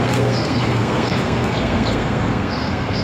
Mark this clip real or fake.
fake